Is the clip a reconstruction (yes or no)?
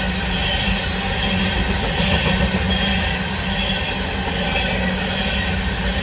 no